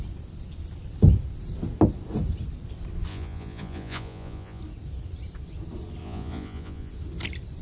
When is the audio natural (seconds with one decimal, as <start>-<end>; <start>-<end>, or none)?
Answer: 0.0-3.1; 4.6-6.0; 6.9-7.6